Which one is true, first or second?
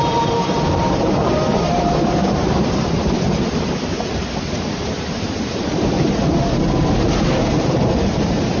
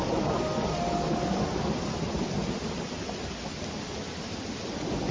second